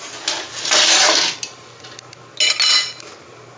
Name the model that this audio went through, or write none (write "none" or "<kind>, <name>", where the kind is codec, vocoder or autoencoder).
none